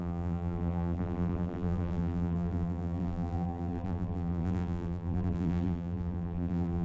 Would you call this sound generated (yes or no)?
yes